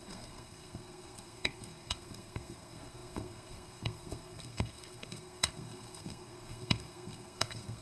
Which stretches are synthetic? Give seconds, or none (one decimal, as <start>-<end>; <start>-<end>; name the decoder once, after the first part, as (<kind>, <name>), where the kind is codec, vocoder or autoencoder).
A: 0.0-7.8 (codec, SNAC)